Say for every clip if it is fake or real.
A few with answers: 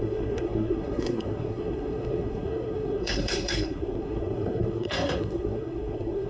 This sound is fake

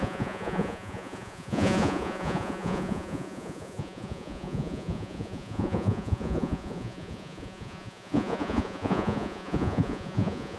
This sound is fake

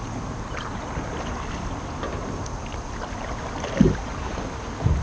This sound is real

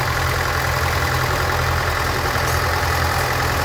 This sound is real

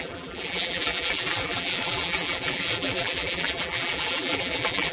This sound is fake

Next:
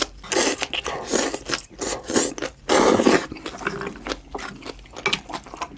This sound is real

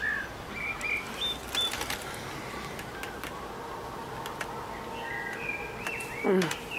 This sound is real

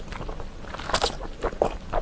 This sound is real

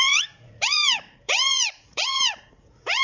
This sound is fake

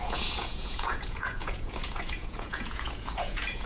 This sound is fake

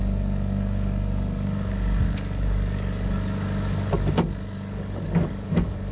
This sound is fake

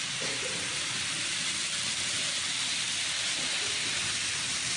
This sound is real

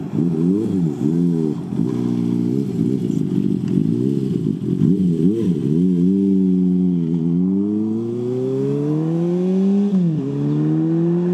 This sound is real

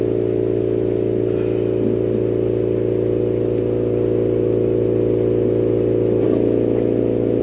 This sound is real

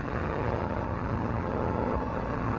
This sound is fake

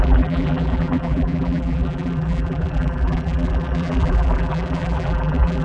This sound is fake